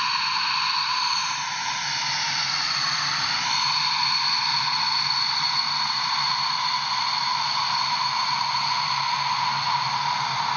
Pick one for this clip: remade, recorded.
recorded